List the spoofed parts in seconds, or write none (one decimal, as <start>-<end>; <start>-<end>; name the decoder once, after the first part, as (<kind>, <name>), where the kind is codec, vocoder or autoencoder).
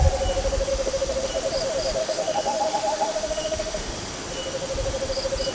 0.7-1.3 (autoencoder, DAC-VAE); 2.0-3.9